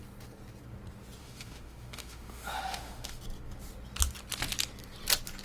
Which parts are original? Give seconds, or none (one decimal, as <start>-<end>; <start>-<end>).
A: 0.0-1.2; 3.2-5.4